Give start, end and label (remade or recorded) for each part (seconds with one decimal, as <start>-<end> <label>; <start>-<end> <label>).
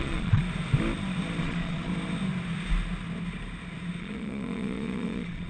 0.0-0.4 remade; 0.4-1.4 recorded; 1.4-1.9 remade; 1.9-4.0 recorded; 4.0-5.5 remade